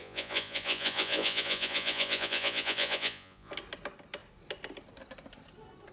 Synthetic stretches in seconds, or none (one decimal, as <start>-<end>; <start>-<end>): 0.0-3.5